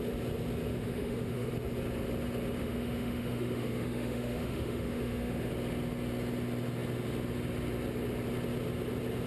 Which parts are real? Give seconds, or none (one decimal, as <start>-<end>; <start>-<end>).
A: 0.0-0.7; 1.5-2.6; 5.5-9.3